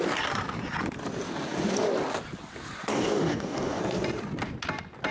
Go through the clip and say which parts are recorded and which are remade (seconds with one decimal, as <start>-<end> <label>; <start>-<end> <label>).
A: 0.0-2.9 recorded; 2.9-3.8 remade; 3.8-5.1 recorded